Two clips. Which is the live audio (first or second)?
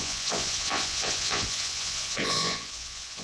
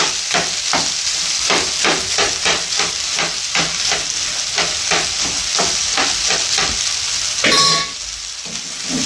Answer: second